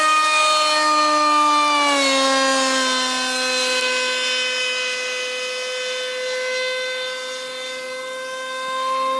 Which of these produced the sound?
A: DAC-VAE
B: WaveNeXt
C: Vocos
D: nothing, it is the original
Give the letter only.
D